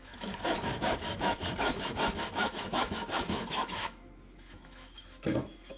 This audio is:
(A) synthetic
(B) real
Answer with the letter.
A